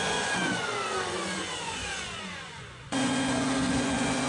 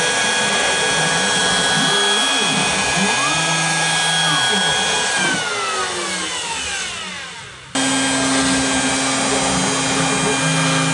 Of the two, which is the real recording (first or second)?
second